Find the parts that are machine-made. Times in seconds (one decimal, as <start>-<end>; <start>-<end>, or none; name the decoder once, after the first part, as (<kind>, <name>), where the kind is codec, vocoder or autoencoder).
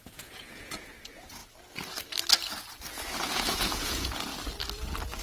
0.0-1.4 (vocoder, Vocos); 2.9-4.3